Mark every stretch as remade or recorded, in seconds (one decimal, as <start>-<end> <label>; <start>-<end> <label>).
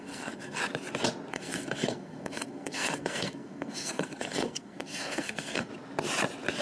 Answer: 0.0-0.6 remade; 0.6-1.3 recorded; 1.3-5.7 remade; 5.7-6.6 recorded